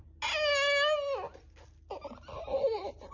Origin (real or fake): real